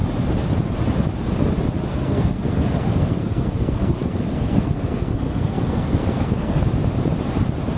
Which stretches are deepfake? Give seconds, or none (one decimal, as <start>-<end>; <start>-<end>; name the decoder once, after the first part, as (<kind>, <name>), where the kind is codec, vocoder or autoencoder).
1.9-6.6 (codec, SNAC)